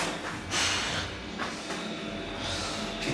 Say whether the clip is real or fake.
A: real